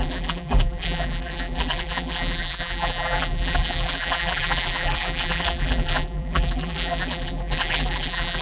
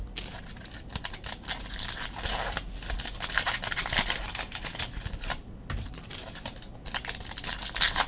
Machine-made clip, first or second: first